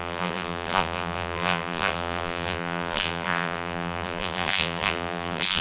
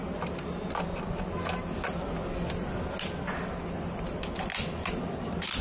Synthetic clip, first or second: first